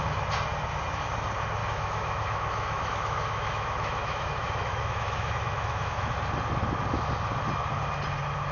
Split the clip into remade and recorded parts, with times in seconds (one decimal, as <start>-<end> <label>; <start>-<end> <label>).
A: 0.0-1.6 recorded; 1.6-6.1 remade; 6.1-8.5 recorded